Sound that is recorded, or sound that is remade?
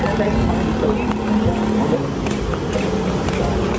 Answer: recorded